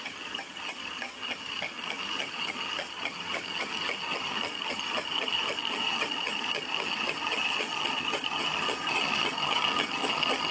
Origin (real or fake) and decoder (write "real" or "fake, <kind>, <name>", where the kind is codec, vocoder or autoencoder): fake, vocoder, HiFi-GAN